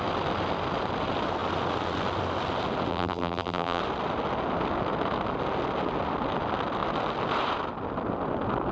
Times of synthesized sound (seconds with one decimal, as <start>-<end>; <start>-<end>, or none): 2.9-3.8